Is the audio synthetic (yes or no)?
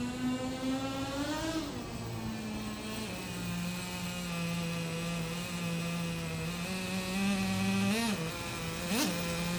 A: no